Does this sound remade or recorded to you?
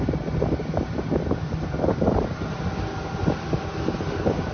recorded